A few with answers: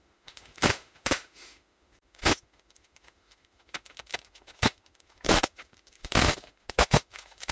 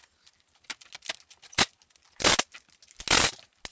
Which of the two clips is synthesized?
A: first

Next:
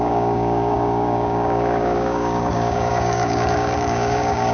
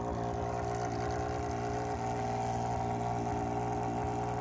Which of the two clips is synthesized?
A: first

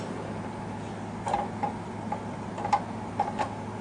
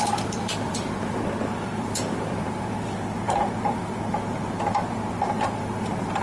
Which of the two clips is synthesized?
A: second